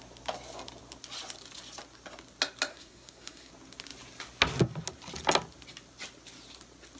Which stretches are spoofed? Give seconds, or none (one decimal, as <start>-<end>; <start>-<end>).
2.7-3.5